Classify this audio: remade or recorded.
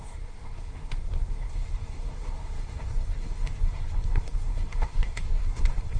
remade